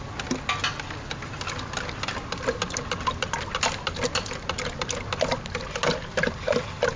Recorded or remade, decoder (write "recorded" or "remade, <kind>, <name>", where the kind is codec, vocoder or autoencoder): recorded